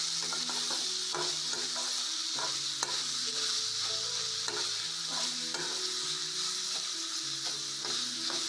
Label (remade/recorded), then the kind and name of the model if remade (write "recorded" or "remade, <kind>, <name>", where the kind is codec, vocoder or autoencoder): recorded